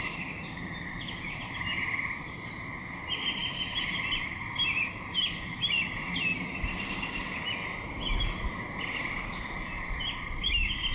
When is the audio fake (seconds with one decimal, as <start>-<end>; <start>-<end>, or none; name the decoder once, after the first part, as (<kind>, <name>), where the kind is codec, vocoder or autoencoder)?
none

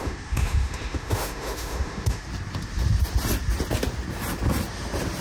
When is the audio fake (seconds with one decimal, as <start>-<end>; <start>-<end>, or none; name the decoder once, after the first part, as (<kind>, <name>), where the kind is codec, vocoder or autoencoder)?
0.0-2.2 (autoencoder, DAC-VAE)

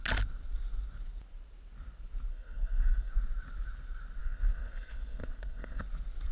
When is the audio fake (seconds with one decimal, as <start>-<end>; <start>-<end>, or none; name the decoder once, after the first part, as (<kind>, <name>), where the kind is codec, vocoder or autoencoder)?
2.3-3.1 (codec, SNAC); 4.2-5.8

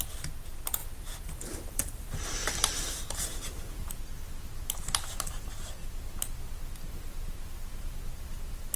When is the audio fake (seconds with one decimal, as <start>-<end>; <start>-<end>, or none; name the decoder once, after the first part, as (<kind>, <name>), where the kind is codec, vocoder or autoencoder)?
0.8-3.9 (vocoder, BigVGAN v2)

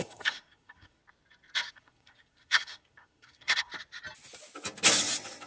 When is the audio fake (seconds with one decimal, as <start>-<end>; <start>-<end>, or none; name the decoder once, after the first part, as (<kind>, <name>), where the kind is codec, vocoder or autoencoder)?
0.0-1.0 (codec, SNAC); 1.7-3.7